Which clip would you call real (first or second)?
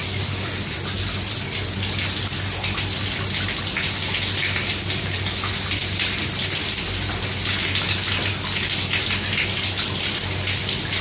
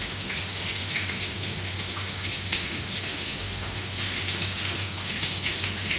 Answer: first